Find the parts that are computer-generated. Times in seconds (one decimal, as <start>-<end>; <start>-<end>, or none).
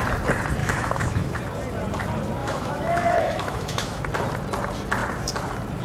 0.6-1.4; 2.4-4.0